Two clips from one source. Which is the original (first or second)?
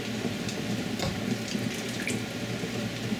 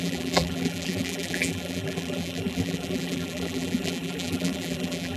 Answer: first